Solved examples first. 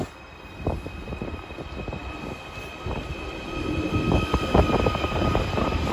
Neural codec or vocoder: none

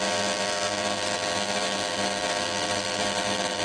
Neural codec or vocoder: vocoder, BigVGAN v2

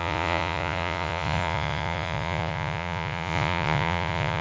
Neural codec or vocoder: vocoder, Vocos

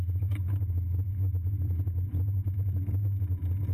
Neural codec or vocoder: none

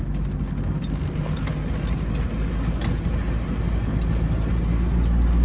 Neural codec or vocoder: none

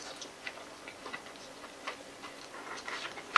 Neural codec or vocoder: vocoder, Vocos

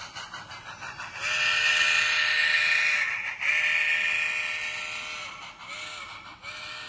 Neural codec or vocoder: none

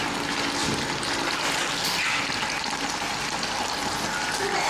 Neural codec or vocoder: none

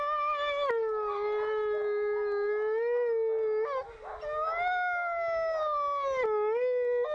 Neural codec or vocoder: none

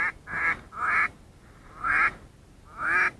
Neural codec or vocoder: none